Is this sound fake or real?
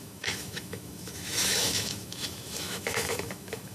fake